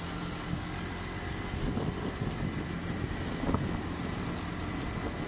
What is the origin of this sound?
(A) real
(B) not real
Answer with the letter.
A